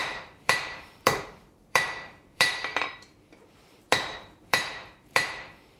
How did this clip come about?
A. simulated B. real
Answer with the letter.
A